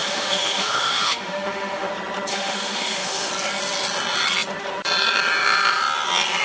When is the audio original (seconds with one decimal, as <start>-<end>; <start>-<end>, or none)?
1.9-2.3; 3.3-6.4